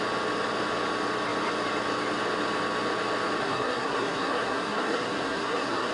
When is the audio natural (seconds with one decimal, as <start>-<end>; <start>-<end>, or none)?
0.0-3.4